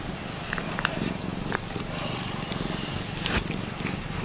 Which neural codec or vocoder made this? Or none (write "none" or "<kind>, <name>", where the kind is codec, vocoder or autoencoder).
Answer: none